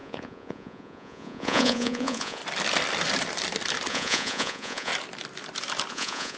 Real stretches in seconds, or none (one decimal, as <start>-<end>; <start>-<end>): 2.4-3.9; 4.9-5.9